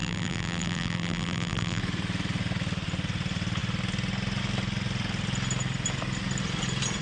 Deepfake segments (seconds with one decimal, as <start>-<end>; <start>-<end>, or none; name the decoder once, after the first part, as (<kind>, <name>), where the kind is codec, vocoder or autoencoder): 0.0-1.8 (vocoder, BigVGAN v2)